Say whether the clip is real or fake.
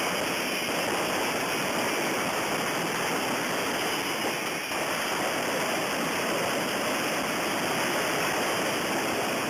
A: real